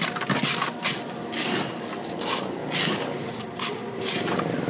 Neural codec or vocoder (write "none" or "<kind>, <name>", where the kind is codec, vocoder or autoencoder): vocoder, BigVGAN v2